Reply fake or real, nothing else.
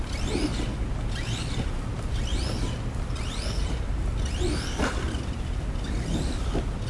real